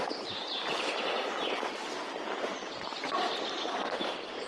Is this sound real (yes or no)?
no